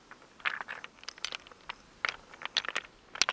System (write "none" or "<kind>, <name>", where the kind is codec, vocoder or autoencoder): none